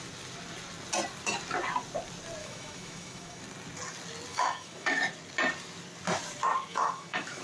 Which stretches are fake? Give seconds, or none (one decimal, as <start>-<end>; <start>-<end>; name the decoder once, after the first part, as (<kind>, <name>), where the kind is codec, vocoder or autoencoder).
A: 2.4-3.4 (autoencoder, DAC-VAE); 4.3-5.0; 6.7-7.4